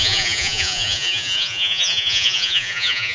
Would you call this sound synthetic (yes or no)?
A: yes